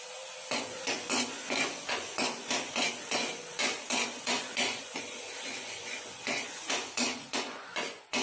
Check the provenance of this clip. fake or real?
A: fake